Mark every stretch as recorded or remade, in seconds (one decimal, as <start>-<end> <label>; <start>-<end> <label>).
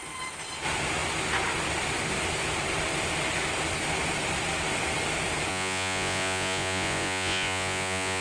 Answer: 0.0-5.5 recorded; 5.5-8.2 remade